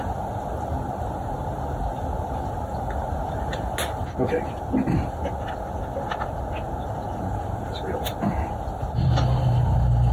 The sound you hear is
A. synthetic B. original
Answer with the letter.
B